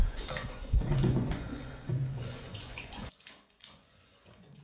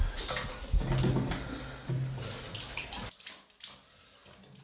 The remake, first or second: first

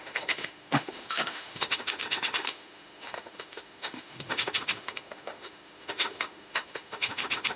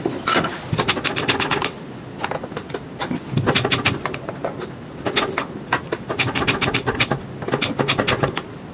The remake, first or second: first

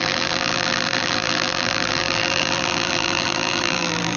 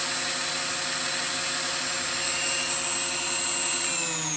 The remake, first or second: first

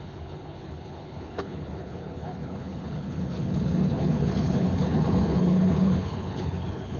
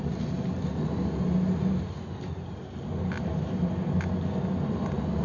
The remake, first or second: first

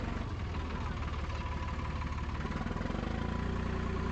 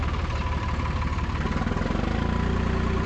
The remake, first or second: second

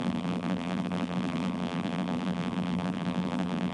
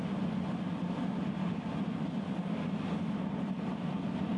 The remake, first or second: first